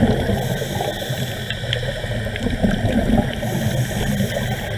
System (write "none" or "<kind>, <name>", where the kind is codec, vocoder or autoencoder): none